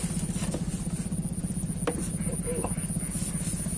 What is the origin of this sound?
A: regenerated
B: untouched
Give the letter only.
B